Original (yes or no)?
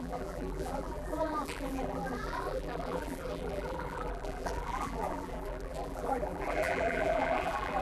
no